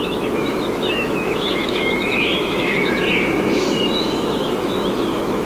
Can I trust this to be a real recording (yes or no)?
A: no